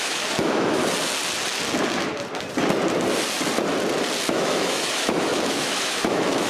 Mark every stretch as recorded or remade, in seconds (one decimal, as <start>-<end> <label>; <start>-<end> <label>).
0.0-0.8 remade; 0.8-4.3 recorded; 4.3-6.5 remade